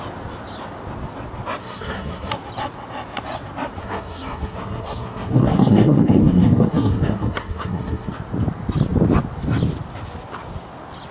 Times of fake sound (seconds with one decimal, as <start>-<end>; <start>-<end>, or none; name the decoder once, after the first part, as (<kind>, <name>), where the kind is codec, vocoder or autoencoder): 1.6-2.3 (codec, SNAC); 3.8-8.1